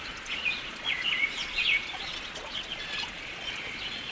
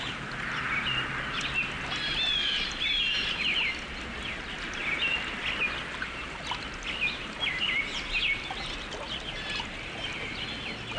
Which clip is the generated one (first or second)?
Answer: first